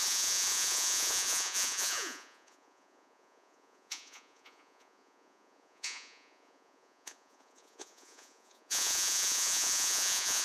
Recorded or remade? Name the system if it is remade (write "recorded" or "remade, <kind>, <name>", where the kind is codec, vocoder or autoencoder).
remade, vocoder, Vocos